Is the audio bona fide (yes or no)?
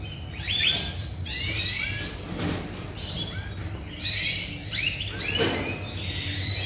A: yes